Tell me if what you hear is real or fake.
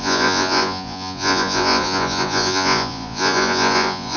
fake